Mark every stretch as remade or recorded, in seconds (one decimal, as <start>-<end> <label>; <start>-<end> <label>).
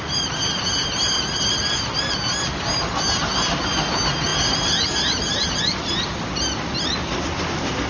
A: 0.0-7.9 recorded